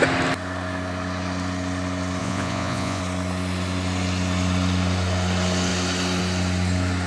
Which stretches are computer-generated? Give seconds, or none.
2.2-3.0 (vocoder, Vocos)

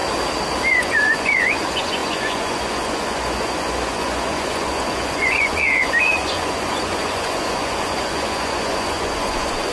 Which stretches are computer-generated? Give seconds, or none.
0.7-9.7 (vocoder, Vocos)

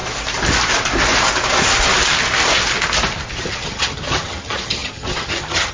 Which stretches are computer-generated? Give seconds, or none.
3.4-5.7 (vocoder, HiFi-GAN)